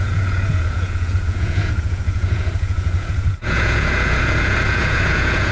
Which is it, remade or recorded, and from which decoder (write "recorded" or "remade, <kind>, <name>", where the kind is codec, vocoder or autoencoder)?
remade, vocoder, Vocos